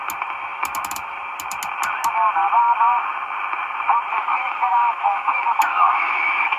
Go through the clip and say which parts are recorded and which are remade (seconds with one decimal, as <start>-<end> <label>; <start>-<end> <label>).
0.0-4.1 recorded; 4.1-6.6 remade